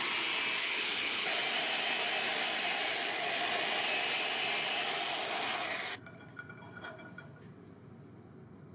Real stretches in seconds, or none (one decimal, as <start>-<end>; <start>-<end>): 0.0-0.6; 1.3-8.7